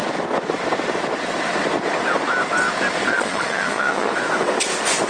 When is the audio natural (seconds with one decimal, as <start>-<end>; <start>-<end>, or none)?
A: 0.0-3.1; 4.1-5.1